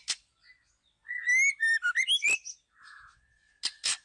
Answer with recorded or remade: recorded